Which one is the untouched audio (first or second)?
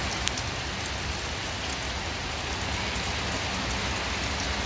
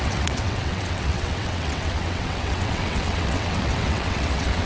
first